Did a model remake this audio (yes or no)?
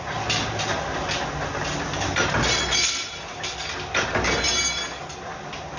no